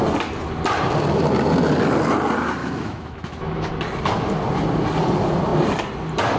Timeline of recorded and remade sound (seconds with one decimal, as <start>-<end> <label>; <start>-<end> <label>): 0.0-2.6 recorded; 2.6-3.7 remade; 3.7-6.4 recorded